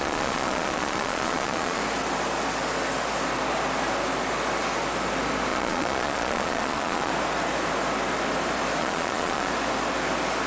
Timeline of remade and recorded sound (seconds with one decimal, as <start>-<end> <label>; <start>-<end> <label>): 0.0-1.8 remade; 1.8-5.5 recorded; 5.5-7.1 remade; 7.1-8.8 recorded; 8.8-9.5 remade; 9.5-10.5 recorded